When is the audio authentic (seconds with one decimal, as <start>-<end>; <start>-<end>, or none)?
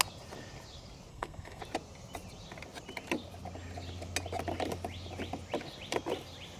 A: 0.0-1.1; 1.6-6.6